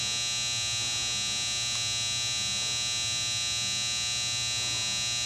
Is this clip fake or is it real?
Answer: real